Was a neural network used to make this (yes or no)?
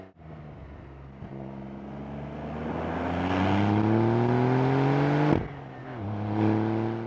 no